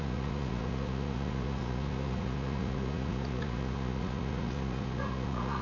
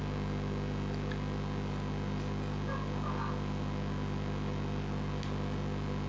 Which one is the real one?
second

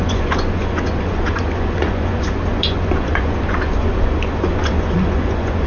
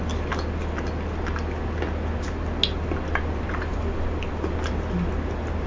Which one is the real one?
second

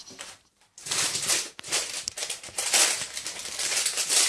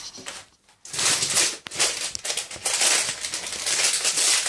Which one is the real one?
second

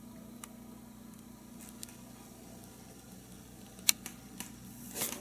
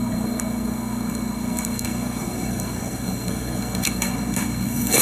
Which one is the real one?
first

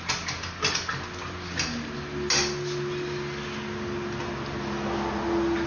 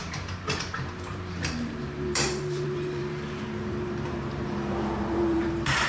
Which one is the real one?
first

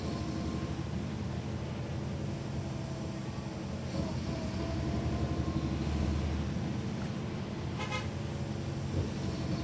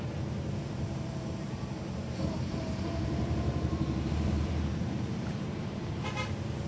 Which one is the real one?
first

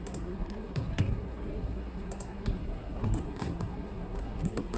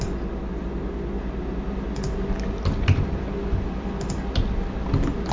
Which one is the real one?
second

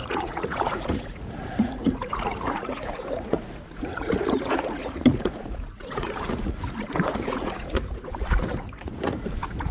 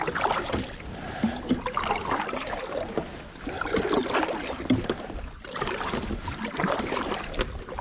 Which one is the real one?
second